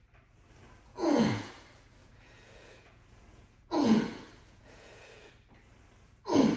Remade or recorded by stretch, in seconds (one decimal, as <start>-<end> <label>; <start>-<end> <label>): 0.0-0.9 recorded; 0.9-1.5 remade; 1.5-2.0 recorded; 2.0-5.3 remade; 5.3-6.6 recorded